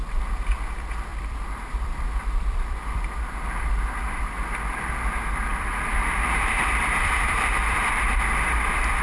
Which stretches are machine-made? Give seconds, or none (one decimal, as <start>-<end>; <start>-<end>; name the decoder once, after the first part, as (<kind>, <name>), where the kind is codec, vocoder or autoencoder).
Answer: 1.1-4.9 (vocoder, BigVGAN v2); 5.5-8.1